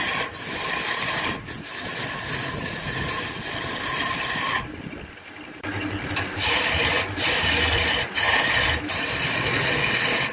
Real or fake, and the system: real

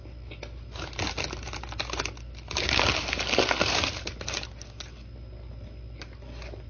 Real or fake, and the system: real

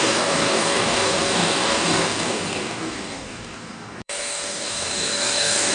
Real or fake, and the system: fake, codec, DAC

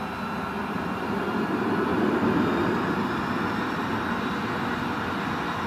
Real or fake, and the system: real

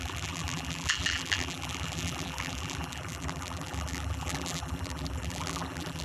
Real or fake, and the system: fake, vocoder, BigVGAN v2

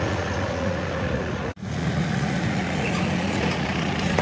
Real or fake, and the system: fake, vocoder, Vocos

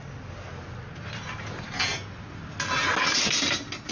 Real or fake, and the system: real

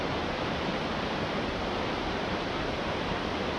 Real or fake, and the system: fake, vocoder, BigVGAN v2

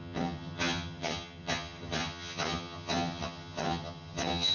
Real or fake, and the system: fake, vocoder, HiFi-GAN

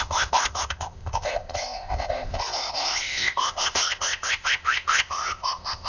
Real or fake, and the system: fake, codec, ZipCodec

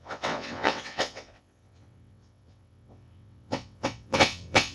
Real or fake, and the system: fake, vocoder, WaveNeXt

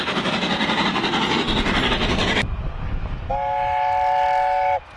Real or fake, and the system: real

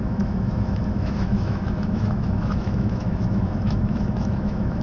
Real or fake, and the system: fake, autoencoder, DAC-VAE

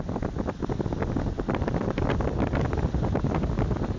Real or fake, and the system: real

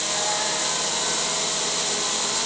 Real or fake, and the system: real